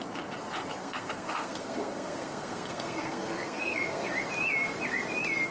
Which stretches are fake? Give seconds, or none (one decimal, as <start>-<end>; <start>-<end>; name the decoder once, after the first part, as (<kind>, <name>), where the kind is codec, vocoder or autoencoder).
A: 0.8-4.1 (codec, SNAC)